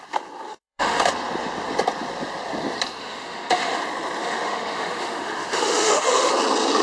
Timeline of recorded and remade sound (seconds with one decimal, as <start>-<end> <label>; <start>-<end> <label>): 0.0-0.5 recorded; 0.5-1.1 remade; 1.1-3.0 recorded; 3.0-3.8 remade; 3.8-4.2 recorded; 4.2-6.3 remade; 6.3-6.8 recorded